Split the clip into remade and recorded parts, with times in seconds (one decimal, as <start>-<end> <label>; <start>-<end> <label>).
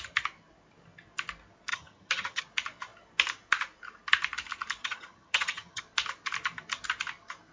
0.0-1.7 recorded; 1.7-2.4 remade; 2.4-4.8 recorded; 4.8-5.8 remade; 5.8-7.5 recorded